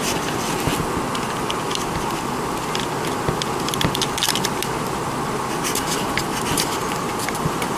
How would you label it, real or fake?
real